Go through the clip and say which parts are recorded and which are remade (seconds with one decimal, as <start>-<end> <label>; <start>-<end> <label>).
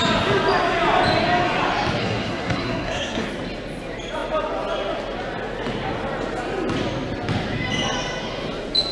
0.0-2.0 recorded; 2.0-3.3 remade; 3.3-8.9 recorded